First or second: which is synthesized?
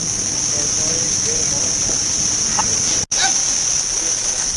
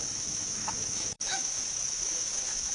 second